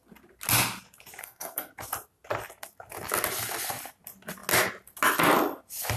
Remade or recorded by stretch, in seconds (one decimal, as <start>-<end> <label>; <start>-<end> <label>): 0.0-1.2 recorded; 1.2-1.7 remade; 1.7-6.0 recorded